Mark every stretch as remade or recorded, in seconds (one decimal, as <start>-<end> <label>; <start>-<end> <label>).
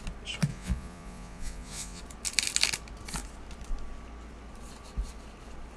0.0-0.5 recorded; 0.5-2.0 remade; 2.0-5.8 recorded